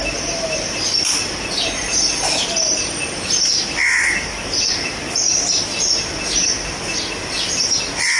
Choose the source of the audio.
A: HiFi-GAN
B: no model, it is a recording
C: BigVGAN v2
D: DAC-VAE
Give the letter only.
C